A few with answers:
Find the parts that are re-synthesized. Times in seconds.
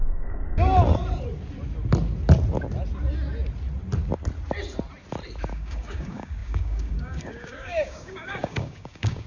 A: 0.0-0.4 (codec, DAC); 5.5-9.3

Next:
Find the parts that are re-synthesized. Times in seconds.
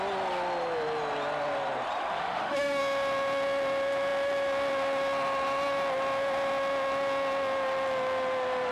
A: 2.1-2.8 (autoencoder, DAC-VAE)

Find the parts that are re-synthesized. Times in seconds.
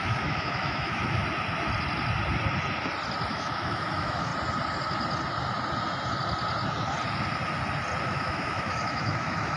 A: 0.0-1.2 (autoencoder, DAC-VAE); 3.3-4.3; 8.0-9.6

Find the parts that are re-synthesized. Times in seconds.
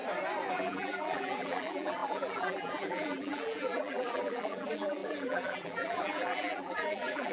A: 0.5-7.3 (vocoder, BigVGAN v2)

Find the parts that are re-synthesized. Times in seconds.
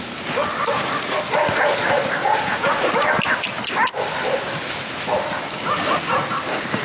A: 2.2-2.9 (vocoder, Vocos)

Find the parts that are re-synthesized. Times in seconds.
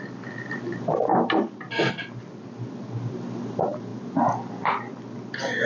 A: none